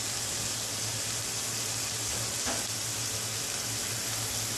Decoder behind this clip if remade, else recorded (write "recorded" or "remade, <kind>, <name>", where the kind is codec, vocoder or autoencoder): recorded